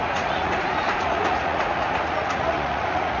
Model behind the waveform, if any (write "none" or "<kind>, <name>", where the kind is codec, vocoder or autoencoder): vocoder, Vocos